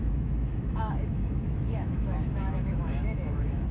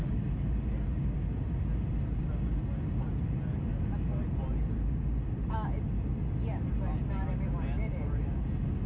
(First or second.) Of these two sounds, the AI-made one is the first